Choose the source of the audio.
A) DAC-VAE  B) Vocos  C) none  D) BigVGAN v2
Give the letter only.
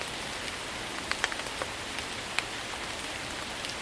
C